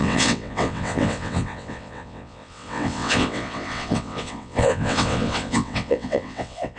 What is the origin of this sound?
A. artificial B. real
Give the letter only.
A